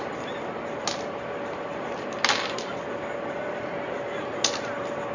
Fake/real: real